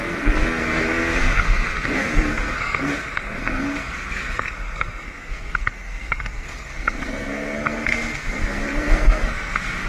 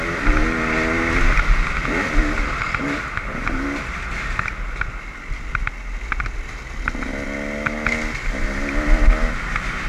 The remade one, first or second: first